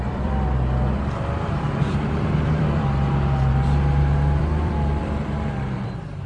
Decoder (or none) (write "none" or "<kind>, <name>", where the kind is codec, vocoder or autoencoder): vocoder, BigVGAN v2